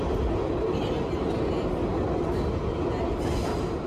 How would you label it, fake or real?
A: real